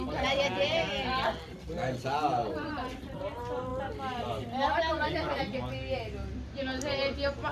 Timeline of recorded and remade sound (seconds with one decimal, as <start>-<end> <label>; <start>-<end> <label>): 0.0-2.4 recorded; 2.4-3.2 remade; 3.2-7.5 recorded